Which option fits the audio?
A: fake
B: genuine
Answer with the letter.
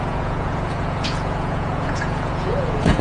A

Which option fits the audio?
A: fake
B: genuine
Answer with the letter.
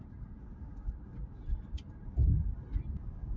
B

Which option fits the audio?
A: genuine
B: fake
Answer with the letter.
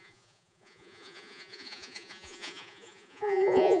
B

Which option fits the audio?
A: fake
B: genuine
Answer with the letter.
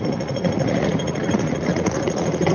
A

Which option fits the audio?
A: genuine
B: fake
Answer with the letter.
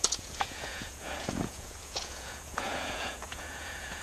B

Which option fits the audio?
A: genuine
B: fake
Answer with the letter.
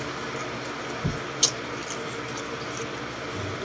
A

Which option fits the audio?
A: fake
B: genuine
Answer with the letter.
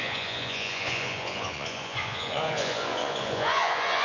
A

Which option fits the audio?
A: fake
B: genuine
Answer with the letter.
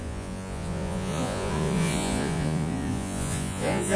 A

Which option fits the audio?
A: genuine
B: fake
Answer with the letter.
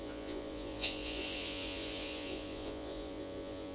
B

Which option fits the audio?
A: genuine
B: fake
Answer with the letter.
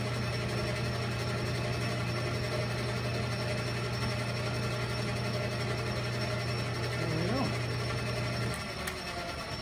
A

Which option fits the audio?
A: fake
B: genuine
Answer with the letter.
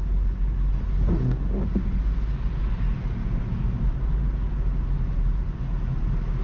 B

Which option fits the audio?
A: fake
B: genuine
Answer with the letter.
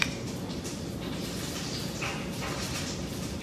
B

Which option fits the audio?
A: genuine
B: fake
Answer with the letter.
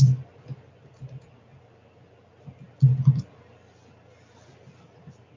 A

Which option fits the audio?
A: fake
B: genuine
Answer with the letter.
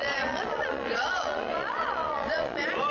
A